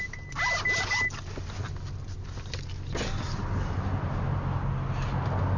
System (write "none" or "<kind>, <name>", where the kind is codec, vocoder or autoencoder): none